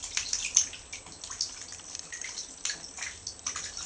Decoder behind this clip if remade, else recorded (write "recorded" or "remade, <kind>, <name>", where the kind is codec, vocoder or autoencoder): recorded